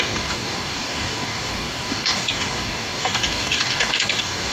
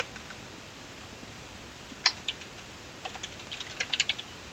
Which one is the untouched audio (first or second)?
second